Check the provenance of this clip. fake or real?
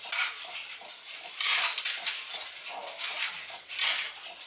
real